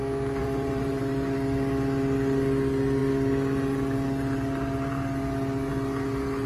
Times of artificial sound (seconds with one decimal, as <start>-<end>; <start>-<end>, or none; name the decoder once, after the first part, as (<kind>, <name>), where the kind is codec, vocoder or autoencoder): 0.4-1.0 (vocoder, BigVGAN v2)